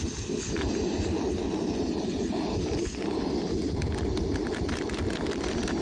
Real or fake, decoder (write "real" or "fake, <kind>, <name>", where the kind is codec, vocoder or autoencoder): real